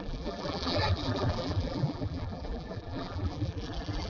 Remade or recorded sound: remade